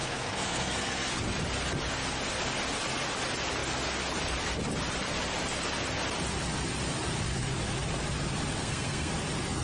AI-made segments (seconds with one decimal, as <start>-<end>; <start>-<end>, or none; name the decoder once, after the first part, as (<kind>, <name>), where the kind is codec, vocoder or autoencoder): 0.0-1.2 (codec, SNAC); 8.6-9.1